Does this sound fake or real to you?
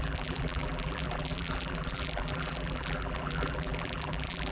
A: fake